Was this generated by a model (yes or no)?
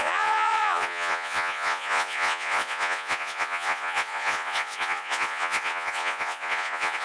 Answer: yes